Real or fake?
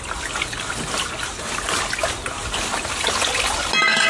real